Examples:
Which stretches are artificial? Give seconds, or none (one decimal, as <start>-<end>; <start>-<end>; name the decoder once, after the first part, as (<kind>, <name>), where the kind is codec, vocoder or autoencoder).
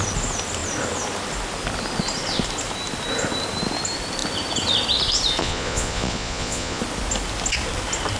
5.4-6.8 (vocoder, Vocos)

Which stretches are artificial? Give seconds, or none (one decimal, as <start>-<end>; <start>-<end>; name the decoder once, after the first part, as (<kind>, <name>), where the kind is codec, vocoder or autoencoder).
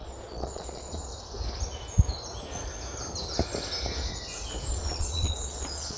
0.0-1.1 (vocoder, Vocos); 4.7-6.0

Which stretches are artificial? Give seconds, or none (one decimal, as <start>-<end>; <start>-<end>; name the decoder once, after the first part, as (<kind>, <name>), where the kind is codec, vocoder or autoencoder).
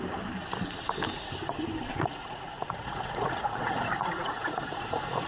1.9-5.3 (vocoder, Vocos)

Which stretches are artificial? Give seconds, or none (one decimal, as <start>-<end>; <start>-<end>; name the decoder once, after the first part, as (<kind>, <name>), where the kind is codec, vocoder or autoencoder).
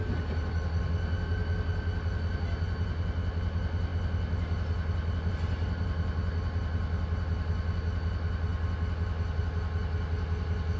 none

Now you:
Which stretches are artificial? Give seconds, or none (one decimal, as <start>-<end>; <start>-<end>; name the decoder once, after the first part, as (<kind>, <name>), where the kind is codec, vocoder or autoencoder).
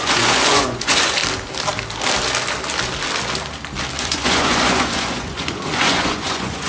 0.0-1.2 (vocoder, Vocos); 4.0-6.7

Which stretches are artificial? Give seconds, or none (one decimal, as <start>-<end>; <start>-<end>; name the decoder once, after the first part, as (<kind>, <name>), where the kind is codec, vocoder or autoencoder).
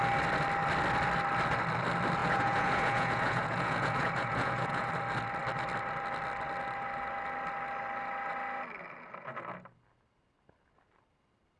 2.2-4.9 (vocoder, Vocos)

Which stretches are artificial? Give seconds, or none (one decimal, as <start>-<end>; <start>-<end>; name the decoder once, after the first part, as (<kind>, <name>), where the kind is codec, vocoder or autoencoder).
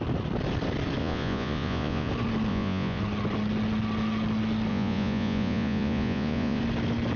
1.0-2.1 (vocoder, Vocos); 2.5-3.0; 4.7-6.6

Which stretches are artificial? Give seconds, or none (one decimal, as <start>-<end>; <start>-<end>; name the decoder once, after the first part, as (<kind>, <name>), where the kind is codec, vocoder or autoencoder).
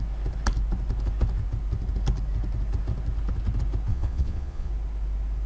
3.9-4.7 (vocoder, Vocos)